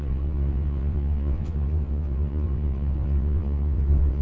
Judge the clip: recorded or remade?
remade